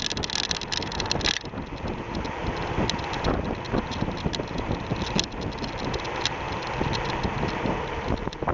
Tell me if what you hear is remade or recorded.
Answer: recorded